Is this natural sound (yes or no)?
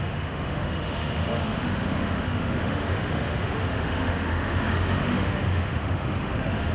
no